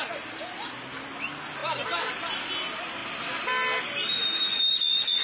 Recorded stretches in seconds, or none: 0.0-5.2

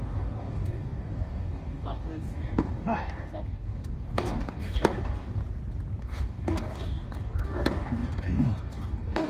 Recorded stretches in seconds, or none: 5.4-6.0